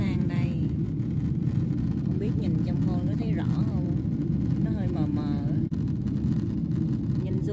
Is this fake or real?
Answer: fake